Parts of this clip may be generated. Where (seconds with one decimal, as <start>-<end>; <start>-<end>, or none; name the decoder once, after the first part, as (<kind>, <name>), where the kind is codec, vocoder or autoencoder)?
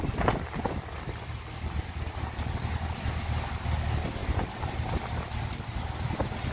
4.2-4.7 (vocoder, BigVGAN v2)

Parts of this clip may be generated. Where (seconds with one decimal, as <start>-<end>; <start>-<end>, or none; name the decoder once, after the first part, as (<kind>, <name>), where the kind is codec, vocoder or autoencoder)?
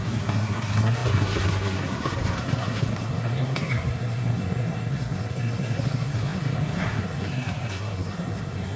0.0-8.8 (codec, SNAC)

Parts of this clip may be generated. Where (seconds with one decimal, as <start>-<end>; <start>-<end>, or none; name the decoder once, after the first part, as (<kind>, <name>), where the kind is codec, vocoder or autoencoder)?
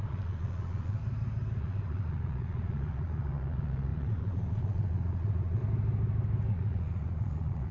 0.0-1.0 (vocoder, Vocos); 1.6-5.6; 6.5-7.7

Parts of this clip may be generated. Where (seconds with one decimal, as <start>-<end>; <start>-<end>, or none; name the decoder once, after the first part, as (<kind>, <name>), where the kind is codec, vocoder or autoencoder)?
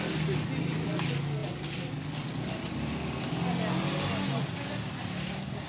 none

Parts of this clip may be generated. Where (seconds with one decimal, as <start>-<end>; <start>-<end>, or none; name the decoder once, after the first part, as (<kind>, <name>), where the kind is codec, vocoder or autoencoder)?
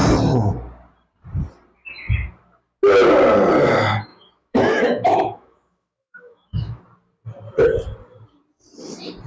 4.1-6.8 (autoencoder, DAC-VAE)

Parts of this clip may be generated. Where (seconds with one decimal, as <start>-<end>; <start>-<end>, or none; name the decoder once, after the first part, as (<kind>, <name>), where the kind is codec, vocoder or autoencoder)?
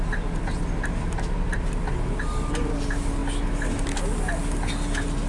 none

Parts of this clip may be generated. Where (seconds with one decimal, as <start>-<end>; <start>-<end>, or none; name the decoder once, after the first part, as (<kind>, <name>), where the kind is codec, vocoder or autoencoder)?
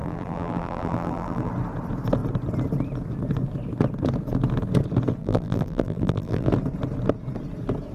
0.0-1.5 (vocoder, BigVGAN v2); 5.2-6.5